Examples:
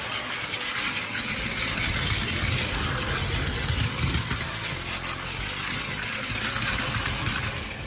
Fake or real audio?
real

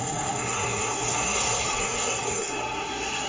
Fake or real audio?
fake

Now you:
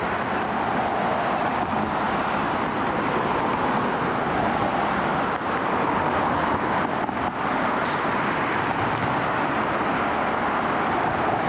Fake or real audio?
real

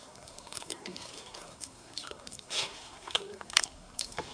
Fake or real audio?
fake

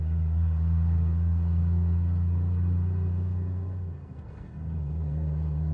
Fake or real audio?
fake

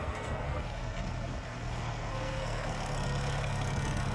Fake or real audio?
fake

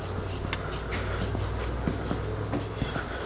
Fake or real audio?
real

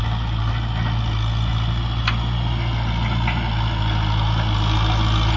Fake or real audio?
real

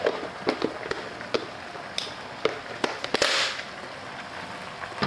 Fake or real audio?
real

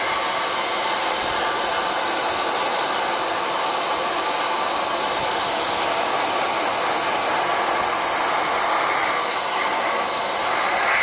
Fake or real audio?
real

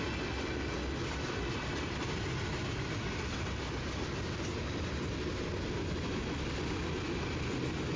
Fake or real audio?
real